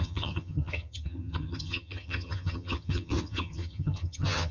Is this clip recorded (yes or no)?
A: no